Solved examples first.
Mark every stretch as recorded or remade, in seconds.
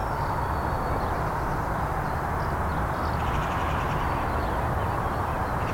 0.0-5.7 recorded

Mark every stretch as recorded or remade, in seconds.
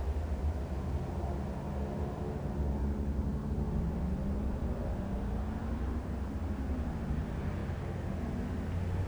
0.0-9.1 recorded